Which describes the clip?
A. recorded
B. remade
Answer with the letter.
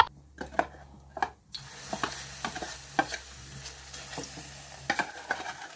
A